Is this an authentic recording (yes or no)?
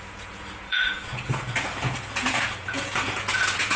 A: no